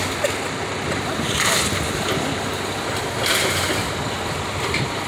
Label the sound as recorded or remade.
recorded